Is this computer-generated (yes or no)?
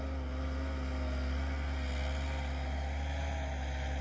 no